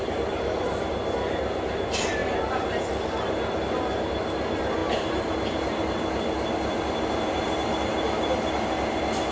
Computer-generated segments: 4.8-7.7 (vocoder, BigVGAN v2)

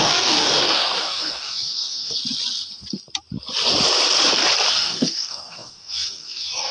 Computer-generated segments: 0.0-2.2 (codec, DAC); 4.7-6.7

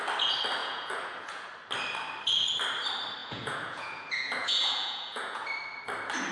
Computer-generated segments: 0.6-1.5 (vocoder, Vocos); 3.2-5.4

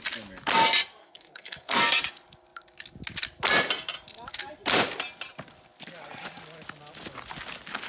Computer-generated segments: 1.0-1.8 (codec, SNAC)

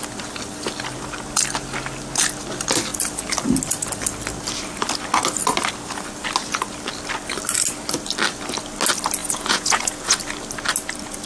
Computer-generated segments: 9.2-10.2 (vocoder, Vocos)

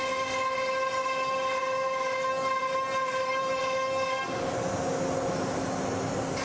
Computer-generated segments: 2.6-3.6 (vocoder, BigVGAN v2)